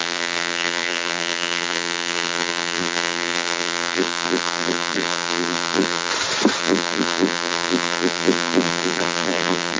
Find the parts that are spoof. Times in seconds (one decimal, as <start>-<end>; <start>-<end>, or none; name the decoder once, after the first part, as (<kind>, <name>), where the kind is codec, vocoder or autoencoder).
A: 0.0-6.1 (vocoder, BigVGAN v2); 6.6-9.8